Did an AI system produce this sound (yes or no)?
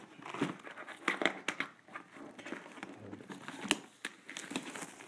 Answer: no